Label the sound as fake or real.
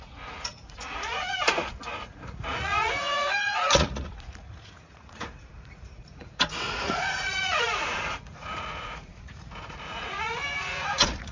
fake